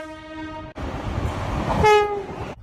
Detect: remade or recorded recorded